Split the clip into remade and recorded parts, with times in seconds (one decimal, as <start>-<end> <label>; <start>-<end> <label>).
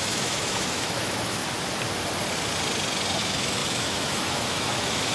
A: 0.0-1.4 remade; 1.4-3.2 recorded; 3.2-5.1 remade